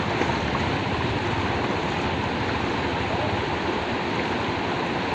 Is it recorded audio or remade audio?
recorded